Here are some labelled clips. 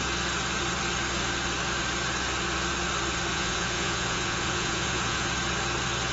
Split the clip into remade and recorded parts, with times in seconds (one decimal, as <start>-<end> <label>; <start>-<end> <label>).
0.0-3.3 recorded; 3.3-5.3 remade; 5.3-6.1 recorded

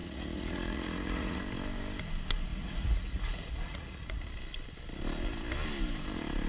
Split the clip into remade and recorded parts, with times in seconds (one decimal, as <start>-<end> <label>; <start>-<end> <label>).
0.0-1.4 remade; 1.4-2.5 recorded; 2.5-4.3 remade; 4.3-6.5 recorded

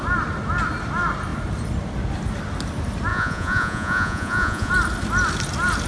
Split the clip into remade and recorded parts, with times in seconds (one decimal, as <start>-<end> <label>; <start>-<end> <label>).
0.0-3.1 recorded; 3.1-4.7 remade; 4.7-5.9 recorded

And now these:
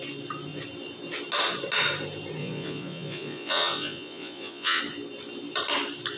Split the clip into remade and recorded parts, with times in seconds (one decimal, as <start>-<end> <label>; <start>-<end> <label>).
0.0-2.4 recorded; 2.4-4.8 remade; 4.8-6.2 recorded

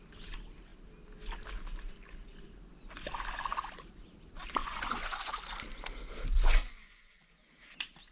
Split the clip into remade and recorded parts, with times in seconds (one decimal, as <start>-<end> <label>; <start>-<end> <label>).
0.0-4.6 recorded; 4.6-5.3 remade; 5.3-6.6 recorded; 6.6-7.3 remade; 7.3-8.1 recorded